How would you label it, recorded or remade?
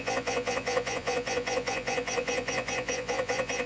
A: remade